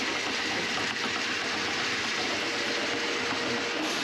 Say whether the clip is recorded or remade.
recorded